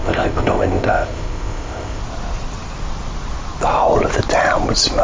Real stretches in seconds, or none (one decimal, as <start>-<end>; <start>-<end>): 2.0-5.0